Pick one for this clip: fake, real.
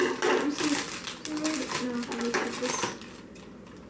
real